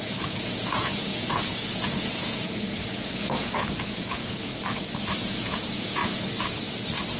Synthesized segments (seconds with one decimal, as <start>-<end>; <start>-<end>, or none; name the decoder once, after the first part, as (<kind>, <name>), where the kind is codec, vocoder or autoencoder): 0.0-4.5 (vocoder, Vocos); 5.2-6.0